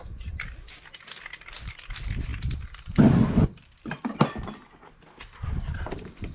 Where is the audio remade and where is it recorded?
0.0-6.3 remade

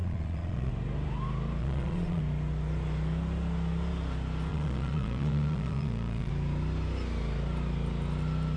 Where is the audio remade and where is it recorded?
0.0-0.7 remade; 0.7-1.6 recorded; 1.6-2.2 remade; 2.2-4.5 recorded; 4.5-6.3 remade; 6.3-8.6 recorded

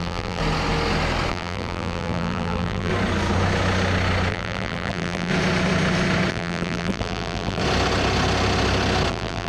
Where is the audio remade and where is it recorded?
0.0-0.4 remade; 0.4-1.3 recorded; 1.3-2.9 remade; 2.9-4.3 recorded; 4.3-5.3 remade; 5.3-6.3 recorded; 6.3-7.6 remade; 7.6-9.1 recorded; 9.1-9.5 remade

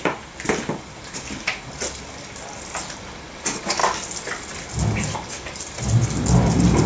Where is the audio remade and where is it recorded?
0.0-6.9 recorded